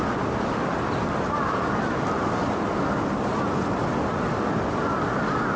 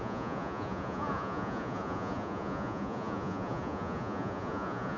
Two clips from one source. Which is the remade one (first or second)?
second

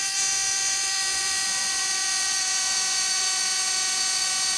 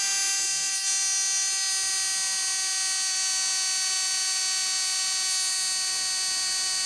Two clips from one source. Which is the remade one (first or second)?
first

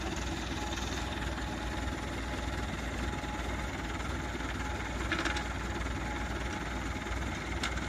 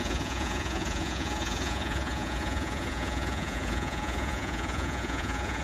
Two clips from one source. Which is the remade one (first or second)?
second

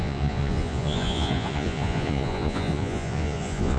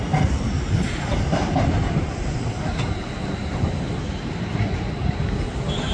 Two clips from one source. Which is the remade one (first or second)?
first